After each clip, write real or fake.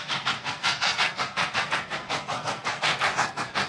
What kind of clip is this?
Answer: fake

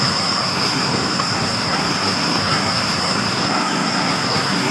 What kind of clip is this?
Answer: fake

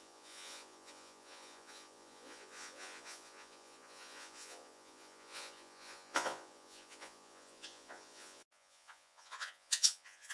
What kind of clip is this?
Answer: fake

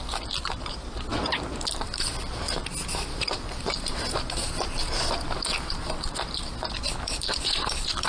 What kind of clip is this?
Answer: fake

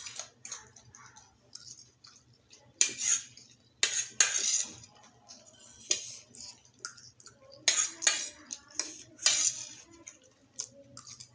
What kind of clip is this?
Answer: real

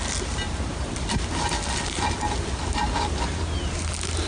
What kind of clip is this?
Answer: real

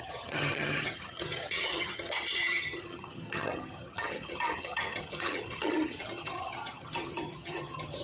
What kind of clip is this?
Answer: fake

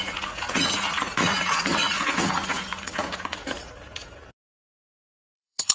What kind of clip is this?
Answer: fake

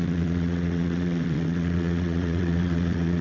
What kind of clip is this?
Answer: fake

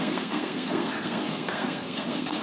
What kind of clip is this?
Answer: fake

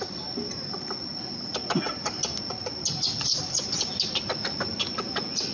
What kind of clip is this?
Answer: real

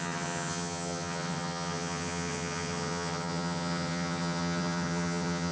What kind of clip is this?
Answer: fake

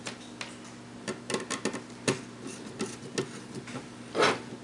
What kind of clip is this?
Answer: real